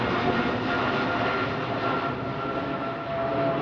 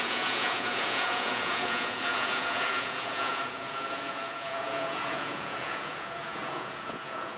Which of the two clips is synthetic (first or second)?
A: second